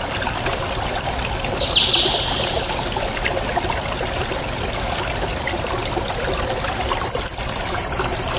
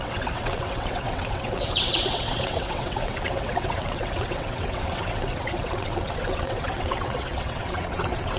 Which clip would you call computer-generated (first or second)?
second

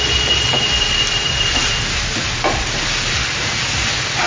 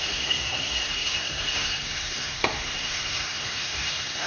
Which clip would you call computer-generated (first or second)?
second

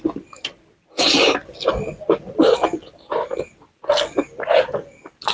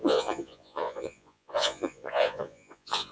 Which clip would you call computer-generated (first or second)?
second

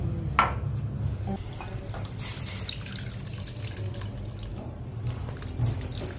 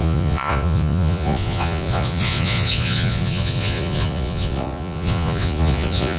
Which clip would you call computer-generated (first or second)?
second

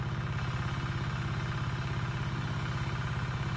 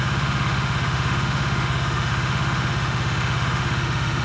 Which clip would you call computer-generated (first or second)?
second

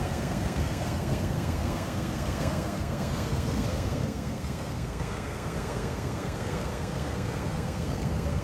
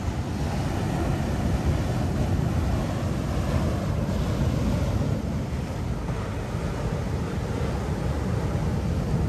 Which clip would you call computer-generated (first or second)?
first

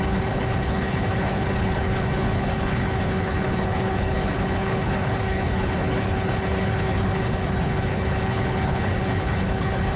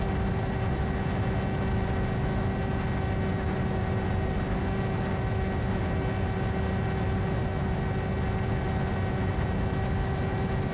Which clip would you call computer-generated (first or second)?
first